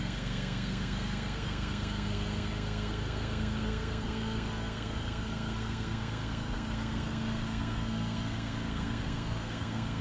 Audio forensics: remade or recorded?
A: remade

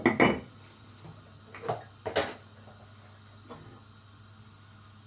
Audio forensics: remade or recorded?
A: recorded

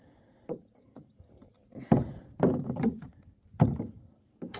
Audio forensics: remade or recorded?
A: recorded